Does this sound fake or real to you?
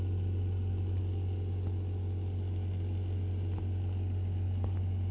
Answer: real